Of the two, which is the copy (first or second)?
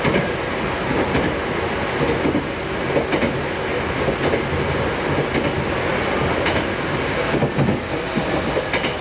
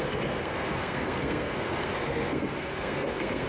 second